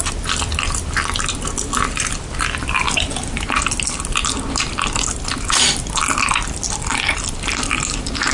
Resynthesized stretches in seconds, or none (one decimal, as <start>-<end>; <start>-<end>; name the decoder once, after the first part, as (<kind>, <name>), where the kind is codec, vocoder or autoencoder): none